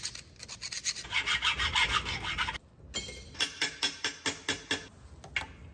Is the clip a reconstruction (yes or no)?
no